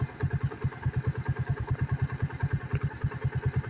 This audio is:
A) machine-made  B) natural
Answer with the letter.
B